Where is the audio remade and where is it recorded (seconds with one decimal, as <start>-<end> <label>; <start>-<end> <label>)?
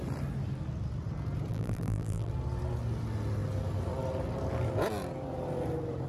0.0-1.5 recorded; 1.5-2.3 remade; 2.3-6.1 recorded